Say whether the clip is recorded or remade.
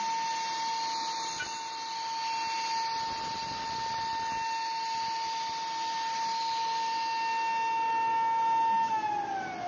recorded